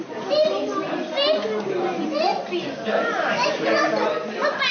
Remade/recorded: recorded